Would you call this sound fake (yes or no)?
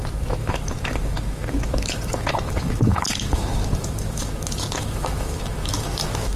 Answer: yes